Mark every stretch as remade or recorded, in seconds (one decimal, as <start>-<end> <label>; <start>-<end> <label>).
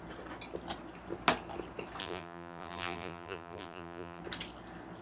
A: 0.0-2.0 recorded; 2.0-4.2 remade; 4.2-5.0 recorded